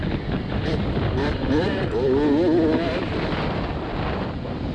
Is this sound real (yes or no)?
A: yes